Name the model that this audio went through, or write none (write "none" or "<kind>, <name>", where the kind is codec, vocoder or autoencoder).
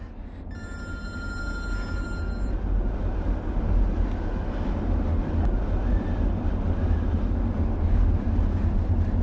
none